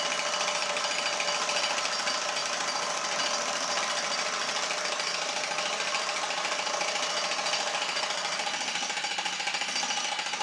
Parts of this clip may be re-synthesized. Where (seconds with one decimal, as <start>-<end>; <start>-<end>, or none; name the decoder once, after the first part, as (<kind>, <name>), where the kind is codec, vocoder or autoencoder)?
none